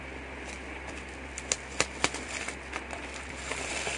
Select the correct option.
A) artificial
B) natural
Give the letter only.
B